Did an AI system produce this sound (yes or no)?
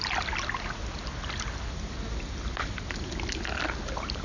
no